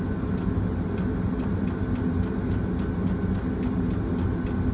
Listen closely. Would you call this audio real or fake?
real